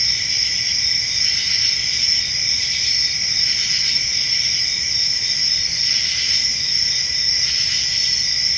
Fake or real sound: real